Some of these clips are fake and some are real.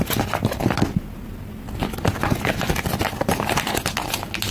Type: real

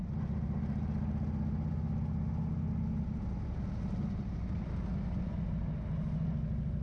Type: real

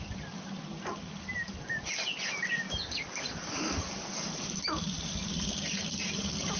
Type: real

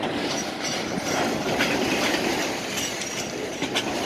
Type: real